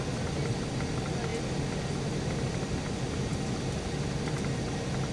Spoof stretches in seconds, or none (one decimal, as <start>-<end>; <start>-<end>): none